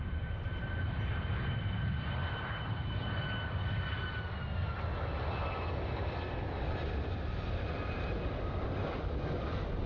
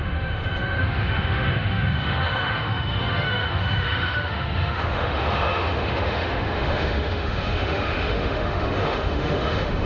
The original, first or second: first